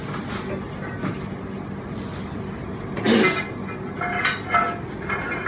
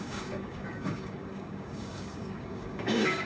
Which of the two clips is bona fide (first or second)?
first